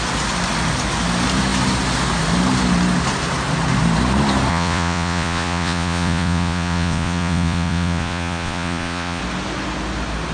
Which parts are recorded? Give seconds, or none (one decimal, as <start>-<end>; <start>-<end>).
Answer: 0.0-4.5; 9.2-10.3